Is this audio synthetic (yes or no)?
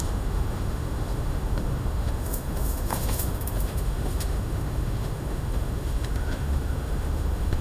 yes